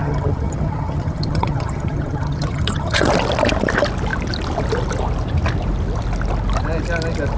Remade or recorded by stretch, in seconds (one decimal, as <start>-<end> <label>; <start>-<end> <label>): 0.0-3.1 remade; 3.1-7.4 recorded